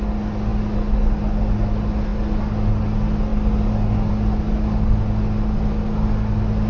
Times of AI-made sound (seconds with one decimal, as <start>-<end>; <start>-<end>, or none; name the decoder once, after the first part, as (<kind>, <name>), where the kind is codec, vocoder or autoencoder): none